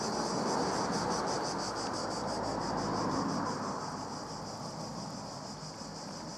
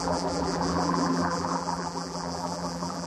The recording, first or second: first